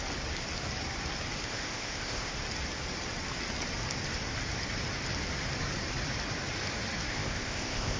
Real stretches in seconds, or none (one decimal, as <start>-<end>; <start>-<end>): 0.0-1.4; 2.3-7.1